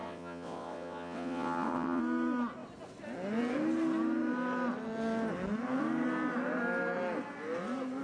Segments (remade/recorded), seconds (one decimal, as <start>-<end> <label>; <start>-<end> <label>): 0.0-2.0 remade; 2.0-8.0 recorded